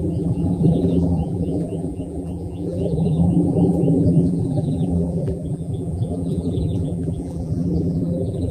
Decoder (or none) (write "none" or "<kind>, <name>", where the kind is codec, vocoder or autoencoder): vocoder, BigVGAN v2